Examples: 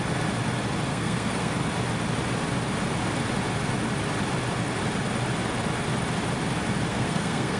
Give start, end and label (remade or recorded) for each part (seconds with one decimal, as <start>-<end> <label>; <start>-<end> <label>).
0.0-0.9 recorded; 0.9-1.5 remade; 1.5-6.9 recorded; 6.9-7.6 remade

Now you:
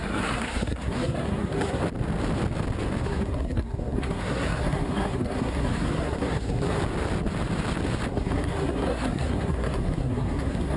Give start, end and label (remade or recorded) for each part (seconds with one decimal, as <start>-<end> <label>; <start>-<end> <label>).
0.0-1.8 remade; 1.8-3.0 recorded; 3.0-6.8 remade; 6.8-8.1 recorded; 8.1-10.8 remade

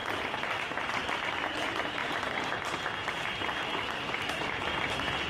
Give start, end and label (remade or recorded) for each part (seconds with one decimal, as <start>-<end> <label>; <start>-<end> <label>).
0.0-5.3 recorded